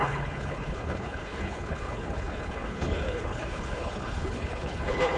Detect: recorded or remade remade